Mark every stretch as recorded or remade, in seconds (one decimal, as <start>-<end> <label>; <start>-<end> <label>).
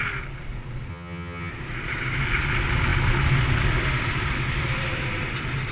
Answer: 0.0-0.9 recorded; 0.9-1.5 remade; 1.5-5.7 recorded